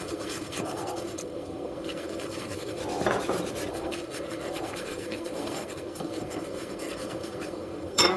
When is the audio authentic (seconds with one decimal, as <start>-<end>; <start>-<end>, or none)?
2.8-3.7

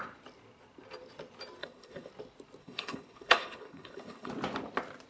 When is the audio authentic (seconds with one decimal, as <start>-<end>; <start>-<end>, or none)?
0.0-1.6; 2.1-2.6; 4.3-5.1

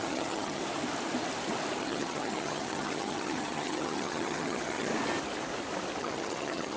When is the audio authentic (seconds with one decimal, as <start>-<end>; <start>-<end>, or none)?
0.6-1.8; 4.9-6.0